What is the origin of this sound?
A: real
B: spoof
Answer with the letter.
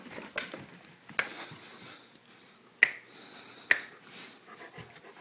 A